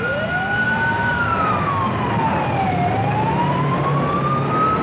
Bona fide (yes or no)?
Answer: yes